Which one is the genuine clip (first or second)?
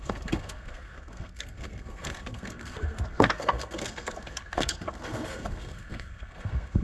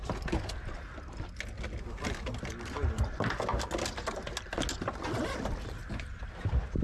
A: second